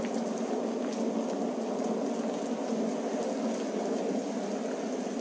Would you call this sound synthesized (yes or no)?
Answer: no